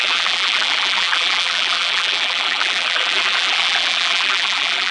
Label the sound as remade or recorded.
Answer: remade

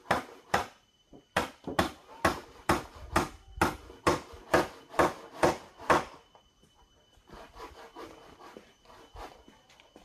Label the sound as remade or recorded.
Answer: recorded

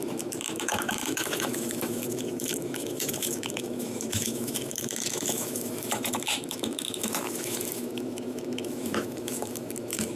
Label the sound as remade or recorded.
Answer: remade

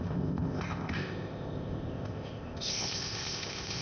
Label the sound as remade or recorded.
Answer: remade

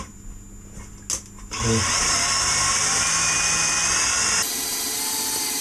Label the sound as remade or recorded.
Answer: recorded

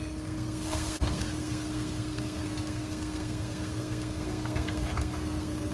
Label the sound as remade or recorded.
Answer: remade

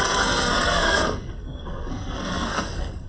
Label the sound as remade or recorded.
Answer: remade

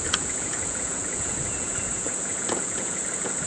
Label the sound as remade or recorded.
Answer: remade